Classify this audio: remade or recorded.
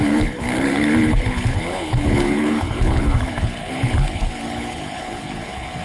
remade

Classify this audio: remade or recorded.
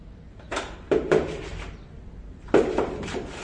recorded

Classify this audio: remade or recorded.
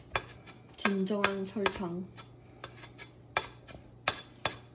recorded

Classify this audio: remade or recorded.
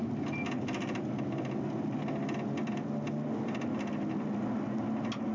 recorded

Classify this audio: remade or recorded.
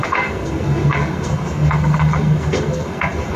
remade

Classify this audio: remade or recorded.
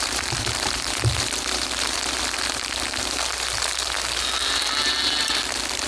remade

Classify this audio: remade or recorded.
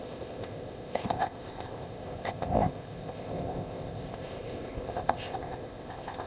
remade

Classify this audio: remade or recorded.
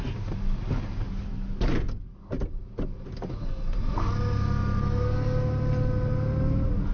recorded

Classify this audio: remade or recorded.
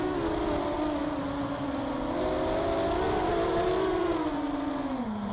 recorded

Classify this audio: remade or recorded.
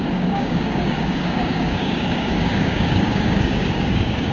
remade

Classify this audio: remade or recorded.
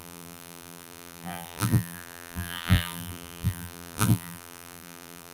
remade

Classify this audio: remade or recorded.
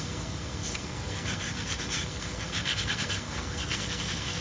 remade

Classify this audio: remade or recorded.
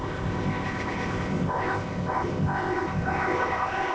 remade